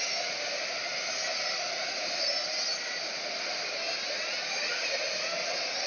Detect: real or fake real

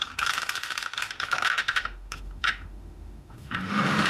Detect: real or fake fake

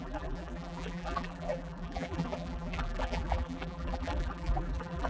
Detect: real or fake fake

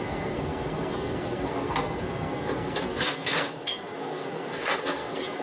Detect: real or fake fake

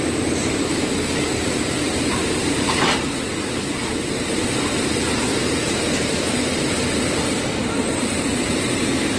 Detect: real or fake fake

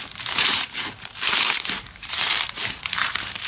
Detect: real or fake fake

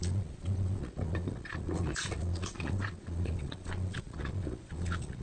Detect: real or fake fake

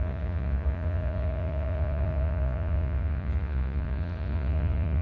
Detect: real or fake fake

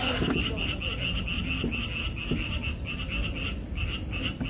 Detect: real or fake real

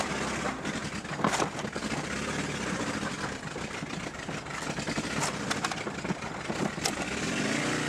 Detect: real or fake real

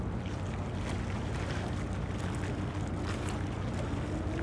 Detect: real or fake real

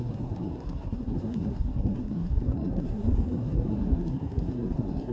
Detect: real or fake fake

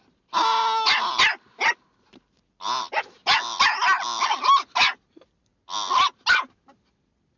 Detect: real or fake real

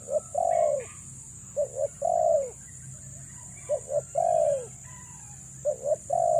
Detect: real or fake real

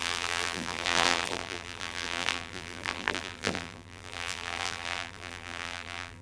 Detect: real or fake fake